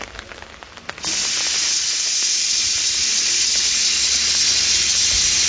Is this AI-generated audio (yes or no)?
no